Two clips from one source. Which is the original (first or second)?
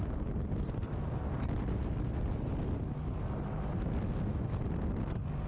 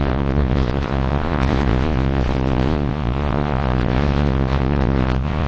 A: first